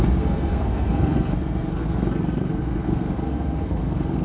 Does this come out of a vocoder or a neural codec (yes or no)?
yes